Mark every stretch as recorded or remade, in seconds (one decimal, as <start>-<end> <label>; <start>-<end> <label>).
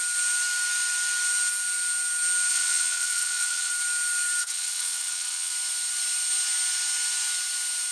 0.0-2.5 recorded; 2.5-3.7 remade; 3.7-4.4 recorded; 4.4-5.5 remade; 5.5-7.9 recorded